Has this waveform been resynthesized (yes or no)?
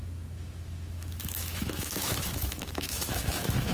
yes